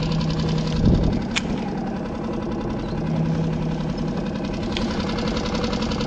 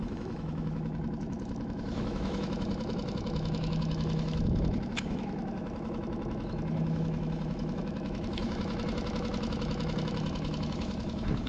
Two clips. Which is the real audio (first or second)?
first